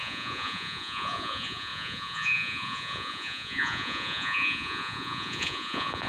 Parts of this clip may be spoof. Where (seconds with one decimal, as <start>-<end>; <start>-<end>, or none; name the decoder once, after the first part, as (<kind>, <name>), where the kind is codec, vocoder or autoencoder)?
0.0-6.1 (vocoder, Vocos)